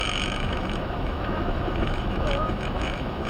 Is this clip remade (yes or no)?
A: yes